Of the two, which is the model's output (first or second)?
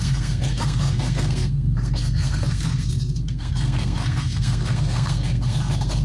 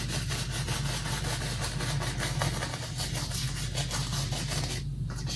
first